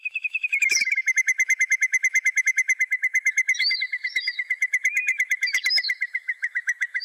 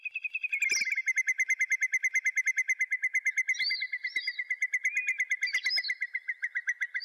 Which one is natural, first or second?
second